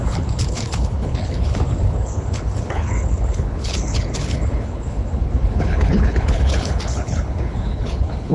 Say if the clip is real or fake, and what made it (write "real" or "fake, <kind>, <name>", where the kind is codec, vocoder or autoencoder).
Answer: fake, codec, HILCodec